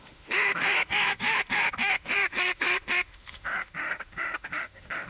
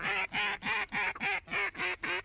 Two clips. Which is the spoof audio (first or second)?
first